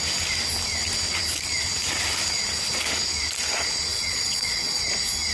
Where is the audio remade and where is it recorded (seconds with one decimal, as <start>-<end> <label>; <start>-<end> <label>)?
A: 0.0-3.9 recorded; 3.9-4.8 remade; 4.8-5.3 recorded